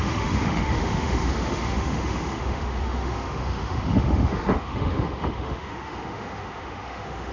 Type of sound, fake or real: fake